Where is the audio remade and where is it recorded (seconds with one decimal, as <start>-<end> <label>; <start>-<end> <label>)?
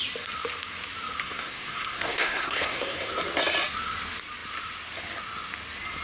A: 0.0-1.2 recorded; 1.2-3.1 remade; 3.1-6.0 recorded